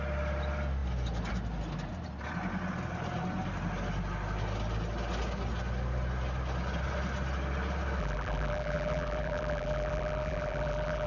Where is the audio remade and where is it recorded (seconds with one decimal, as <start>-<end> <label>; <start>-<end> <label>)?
0.0-8.0 recorded; 8.0-11.1 remade